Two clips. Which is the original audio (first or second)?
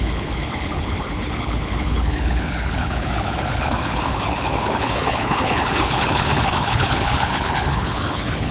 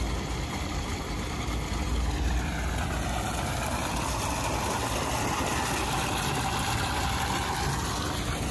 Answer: second